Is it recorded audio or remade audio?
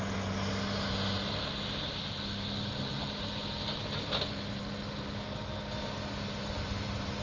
recorded